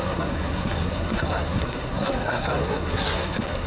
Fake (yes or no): yes